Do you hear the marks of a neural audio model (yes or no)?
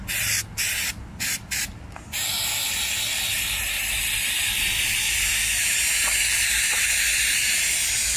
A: no